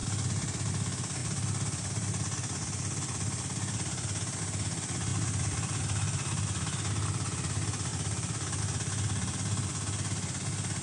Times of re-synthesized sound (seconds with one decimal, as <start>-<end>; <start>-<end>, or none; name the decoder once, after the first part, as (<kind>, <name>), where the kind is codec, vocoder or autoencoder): 0.0-0.7 (vocoder, BigVGAN v2); 1.2-4.4; 5.1-5.8; 7.9-8.6